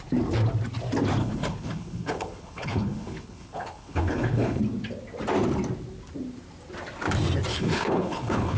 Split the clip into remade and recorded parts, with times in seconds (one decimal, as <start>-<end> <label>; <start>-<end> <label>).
0.0-1.2 recorded; 1.2-4.6 remade; 4.6-7.5 recorded; 7.5-8.6 remade